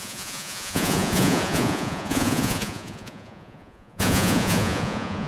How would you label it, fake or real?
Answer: fake